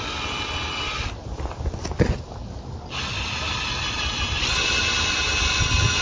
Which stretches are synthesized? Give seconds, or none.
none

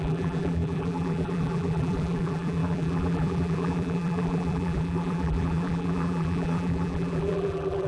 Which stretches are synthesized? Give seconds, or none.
0.0-7.9 (vocoder, BigVGAN v2)

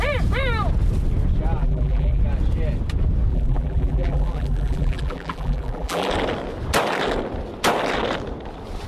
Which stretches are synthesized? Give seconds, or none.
1.6-2.2 (vocoder, BigVGAN v2); 3.3-6.1

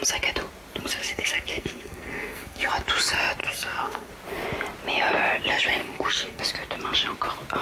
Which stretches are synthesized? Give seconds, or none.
1.0-2.7 (codec, SNAC); 3.4-4.1; 5.8-6.4